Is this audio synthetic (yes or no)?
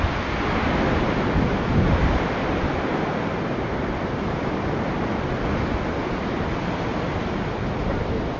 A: no